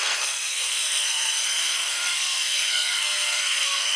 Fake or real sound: fake